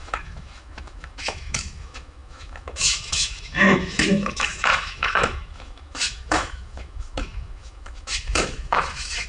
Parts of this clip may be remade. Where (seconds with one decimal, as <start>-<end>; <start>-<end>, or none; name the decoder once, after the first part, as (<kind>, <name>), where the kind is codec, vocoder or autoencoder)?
0.0-9.3 (autoencoder, DAC-VAE)